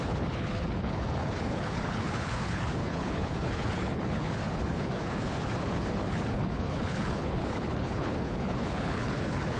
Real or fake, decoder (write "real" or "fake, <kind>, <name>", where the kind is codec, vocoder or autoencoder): fake, codec, HILCodec